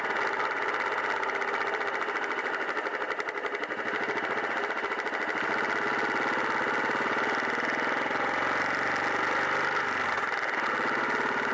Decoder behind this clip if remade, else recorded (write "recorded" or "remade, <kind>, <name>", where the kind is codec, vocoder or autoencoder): recorded